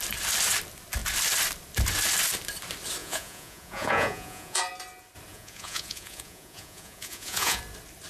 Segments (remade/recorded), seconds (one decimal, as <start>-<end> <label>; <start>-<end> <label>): 0.0-3.0 recorded; 3.0-4.6 remade; 4.6-5.3 recorded; 5.3-7.6 remade; 7.6-8.1 recorded